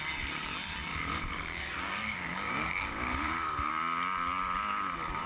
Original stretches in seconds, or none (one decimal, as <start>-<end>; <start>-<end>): 0.0-0.9; 3.7-5.3

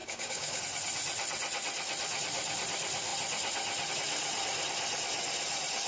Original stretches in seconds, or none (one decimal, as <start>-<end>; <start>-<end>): 0.6-5.9

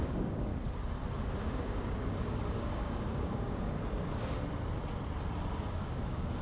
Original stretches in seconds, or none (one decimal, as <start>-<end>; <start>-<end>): 0.5-1.4; 3.8-5.7

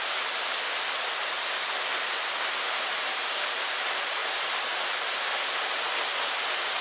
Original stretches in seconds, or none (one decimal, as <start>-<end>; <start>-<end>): 0.0-6.8

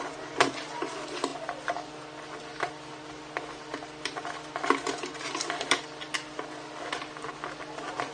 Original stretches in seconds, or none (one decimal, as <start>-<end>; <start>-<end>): 0.0-8.1

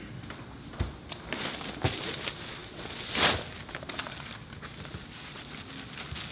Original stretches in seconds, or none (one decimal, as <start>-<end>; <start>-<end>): 0.0-6.3

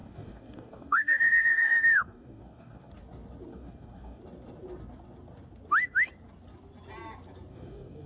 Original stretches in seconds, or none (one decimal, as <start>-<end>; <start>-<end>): 2.9-3.5; 4.2-7.5